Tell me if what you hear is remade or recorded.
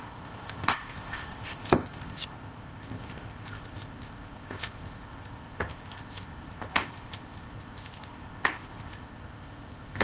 remade